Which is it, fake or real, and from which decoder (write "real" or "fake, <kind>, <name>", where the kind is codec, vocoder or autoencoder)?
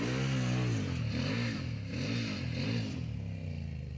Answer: real